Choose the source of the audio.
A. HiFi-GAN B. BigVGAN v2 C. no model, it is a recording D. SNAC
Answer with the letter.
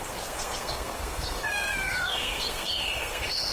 D